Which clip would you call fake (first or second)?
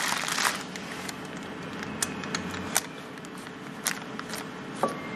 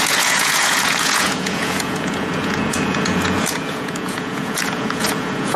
second